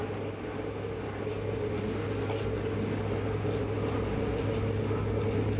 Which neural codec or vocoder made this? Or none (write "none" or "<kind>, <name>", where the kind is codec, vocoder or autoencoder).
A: none